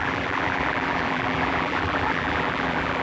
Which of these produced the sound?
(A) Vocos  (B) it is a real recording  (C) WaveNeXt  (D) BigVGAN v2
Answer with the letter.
D